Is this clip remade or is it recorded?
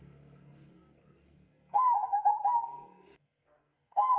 remade